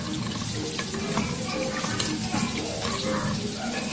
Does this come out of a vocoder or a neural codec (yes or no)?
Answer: no